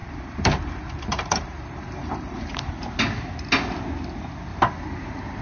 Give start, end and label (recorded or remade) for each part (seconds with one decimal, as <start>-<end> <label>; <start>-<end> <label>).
0.0-2.7 remade; 2.7-4.5 recorded; 4.5-5.4 remade